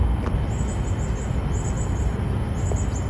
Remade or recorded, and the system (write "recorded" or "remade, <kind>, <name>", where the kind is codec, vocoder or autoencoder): recorded